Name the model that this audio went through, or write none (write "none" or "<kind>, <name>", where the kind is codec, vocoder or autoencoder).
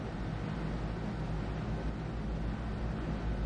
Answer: none